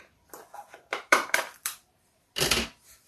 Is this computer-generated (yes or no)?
yes